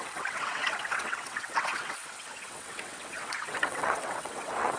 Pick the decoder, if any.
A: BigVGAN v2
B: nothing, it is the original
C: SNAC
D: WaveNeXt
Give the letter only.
D